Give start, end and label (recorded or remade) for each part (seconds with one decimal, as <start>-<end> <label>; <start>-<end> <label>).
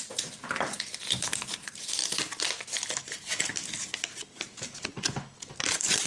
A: 0.0-2.0 remade; 2.0-3.0 recorded; 3.0-3.5 remade; 3.5-5.6 recorded; 5.6-6.1 remade